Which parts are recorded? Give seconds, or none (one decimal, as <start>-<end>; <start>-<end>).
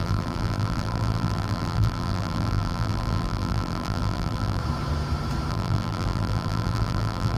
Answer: 4.6-5.5